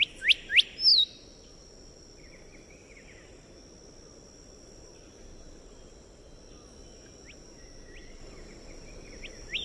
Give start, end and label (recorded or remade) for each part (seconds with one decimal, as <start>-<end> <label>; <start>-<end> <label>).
0.0-0.9 recorded; 0.9-2.3 remade; 2.3-8.0 recorded; 8.0-9.6 remade

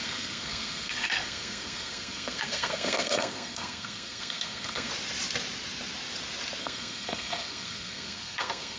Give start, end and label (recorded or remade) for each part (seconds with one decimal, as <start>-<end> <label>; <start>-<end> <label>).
0.0-4.9 remade; 4.9-6.6 recorded; 6.6-8.8 remade

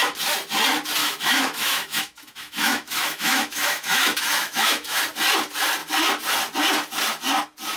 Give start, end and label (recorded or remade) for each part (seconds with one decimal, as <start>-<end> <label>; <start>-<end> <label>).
0.0-1.0 recorded; 1.0-5.0 remade; 5.0-7.8 recorded

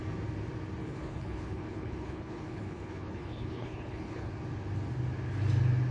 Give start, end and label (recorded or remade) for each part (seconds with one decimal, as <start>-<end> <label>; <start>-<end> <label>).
0.0-0.8 recorded; 0.8-4.3 remade; 4.3-5.9 recorded